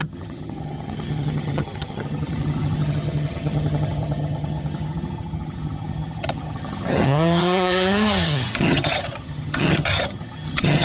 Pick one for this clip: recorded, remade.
remade